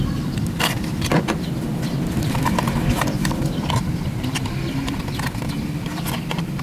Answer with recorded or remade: remade